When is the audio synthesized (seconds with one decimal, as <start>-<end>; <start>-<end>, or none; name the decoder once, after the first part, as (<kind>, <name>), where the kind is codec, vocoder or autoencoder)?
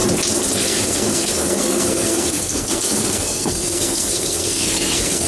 0.5-5.3 (codec, SNAC)